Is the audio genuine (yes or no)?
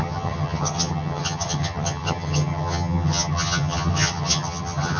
no